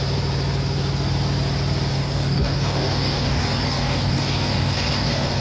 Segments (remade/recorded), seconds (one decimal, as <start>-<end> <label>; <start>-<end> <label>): 0.0-1.9 recorded; 1.9-5.4 remade